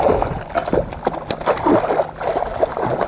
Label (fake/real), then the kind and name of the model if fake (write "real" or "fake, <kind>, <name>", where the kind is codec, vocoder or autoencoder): real